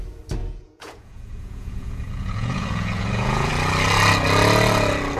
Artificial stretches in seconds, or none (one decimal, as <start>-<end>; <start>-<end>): 0.4-3.5